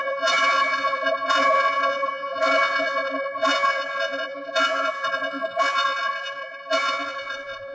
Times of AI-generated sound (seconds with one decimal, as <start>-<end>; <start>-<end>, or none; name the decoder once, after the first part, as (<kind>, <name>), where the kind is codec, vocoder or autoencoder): 0.0-7.7 (vocoder, Vocos)